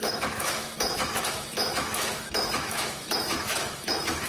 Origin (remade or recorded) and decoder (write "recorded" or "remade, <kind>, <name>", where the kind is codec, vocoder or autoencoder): remade, autoencoder, DAC-VAE